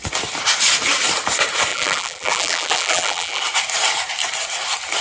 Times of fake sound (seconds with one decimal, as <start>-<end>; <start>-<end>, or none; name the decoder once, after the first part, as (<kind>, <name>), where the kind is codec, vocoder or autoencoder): 1.7-3.4 (vocoder, BigVGAN v2)